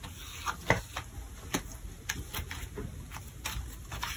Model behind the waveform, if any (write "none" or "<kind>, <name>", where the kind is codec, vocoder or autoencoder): none